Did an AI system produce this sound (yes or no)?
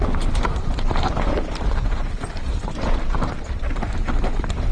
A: yes